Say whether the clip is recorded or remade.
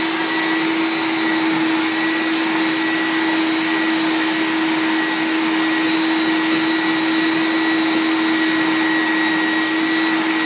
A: recorded